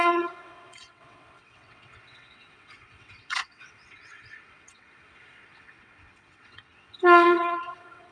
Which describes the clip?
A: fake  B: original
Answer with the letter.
A